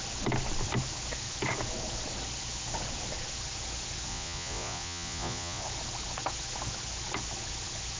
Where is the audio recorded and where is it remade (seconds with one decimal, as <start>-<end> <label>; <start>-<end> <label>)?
0.0-4.1 recorded; 4.1-5.6 remade; 5.6-8.0 recorded